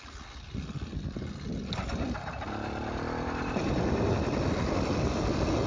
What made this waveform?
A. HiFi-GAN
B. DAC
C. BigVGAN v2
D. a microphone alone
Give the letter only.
D